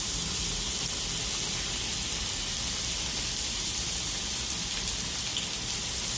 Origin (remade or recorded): recorded